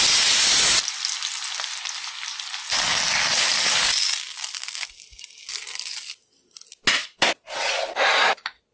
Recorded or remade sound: recorded